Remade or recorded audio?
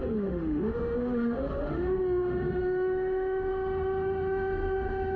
remade